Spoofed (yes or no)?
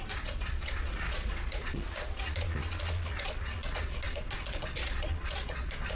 yes